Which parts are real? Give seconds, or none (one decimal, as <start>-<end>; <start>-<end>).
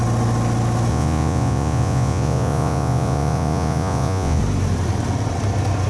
0.0-0.9; 4.4-5.9